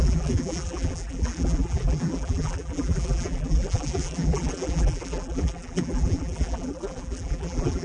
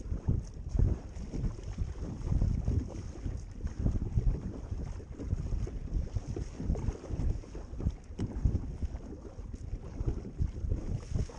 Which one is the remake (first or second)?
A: first